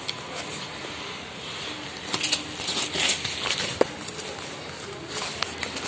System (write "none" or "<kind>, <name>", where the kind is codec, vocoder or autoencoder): none